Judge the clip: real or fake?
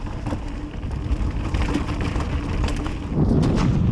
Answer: real